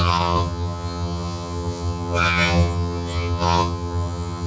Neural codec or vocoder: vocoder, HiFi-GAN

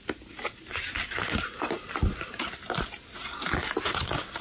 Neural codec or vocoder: none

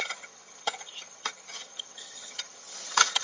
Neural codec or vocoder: vocoder, HiFi-GAN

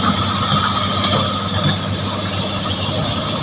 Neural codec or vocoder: none